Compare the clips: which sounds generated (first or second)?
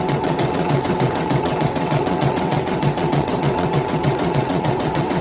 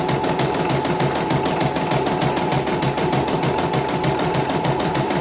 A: first